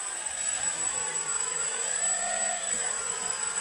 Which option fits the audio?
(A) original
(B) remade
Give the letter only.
B